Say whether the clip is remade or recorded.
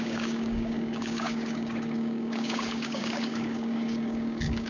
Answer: remade